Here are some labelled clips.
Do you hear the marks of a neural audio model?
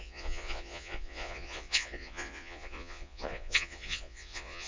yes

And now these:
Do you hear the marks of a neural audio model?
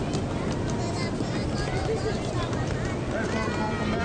no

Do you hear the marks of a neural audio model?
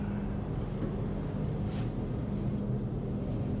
no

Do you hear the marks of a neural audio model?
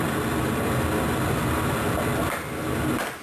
no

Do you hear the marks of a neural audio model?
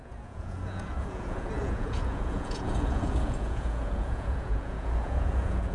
yes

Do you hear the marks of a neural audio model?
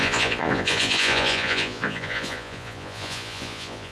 yes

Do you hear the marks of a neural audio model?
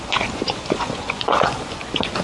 yes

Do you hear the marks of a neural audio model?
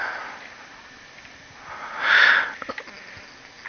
no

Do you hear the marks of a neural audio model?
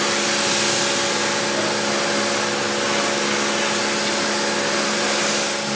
no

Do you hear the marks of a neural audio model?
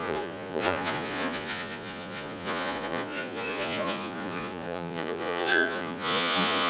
yes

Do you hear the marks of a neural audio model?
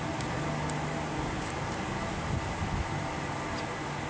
no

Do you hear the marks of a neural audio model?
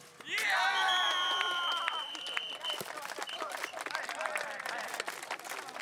no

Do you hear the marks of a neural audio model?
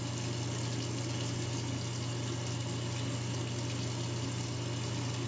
no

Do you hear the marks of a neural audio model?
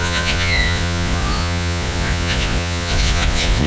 yes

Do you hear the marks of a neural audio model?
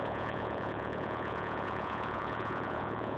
yes